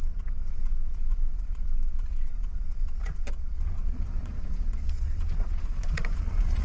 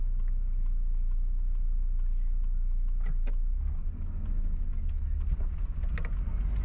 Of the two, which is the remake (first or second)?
first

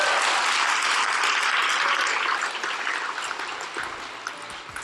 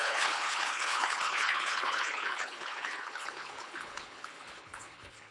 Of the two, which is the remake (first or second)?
second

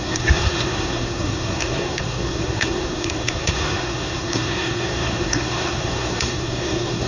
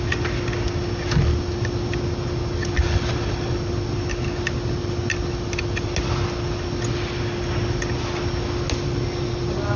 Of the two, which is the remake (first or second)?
first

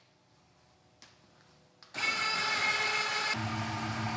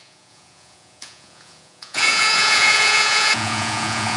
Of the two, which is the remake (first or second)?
second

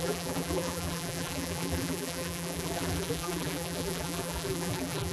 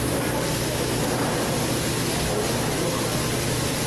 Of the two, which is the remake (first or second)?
first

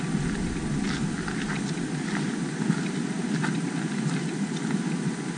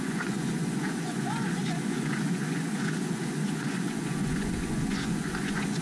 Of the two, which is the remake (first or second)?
second